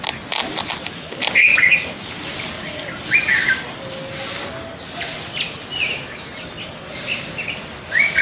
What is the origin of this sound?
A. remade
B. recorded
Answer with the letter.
B